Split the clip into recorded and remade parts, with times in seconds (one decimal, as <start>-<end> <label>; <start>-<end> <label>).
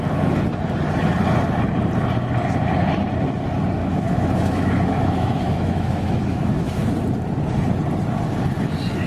0.0-3.8 recorded; 3.8-6.9 remade; 6.9-9.1 recorded